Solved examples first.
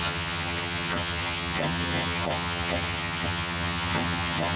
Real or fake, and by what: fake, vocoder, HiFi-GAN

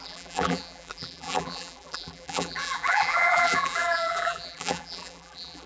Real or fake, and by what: fake, vocoder, BigVGAN v2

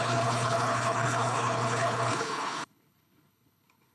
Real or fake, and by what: fake, codec, HILCodec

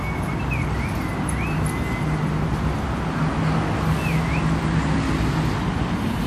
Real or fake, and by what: real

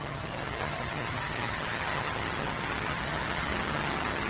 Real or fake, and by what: fake, vocoder, HiFi-GAN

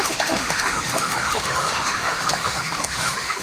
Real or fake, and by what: fake, autoencoder, DAC-VAE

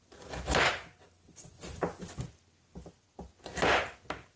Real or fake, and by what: real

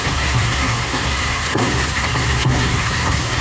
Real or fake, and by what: fake, codec, SNAC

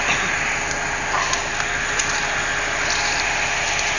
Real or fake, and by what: real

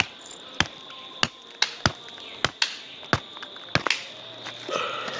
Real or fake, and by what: real